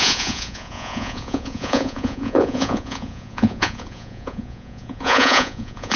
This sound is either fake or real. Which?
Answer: fake